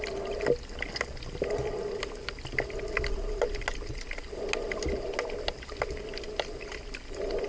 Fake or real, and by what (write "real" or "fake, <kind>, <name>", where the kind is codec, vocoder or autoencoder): real